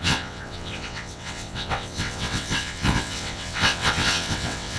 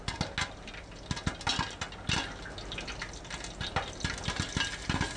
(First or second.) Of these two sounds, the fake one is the first